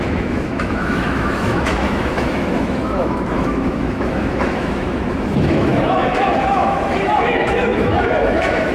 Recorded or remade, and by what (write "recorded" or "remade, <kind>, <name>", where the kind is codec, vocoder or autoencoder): remade, autoencoder, DAC-VAE